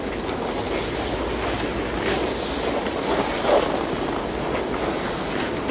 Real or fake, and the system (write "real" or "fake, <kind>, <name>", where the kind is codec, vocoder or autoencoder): real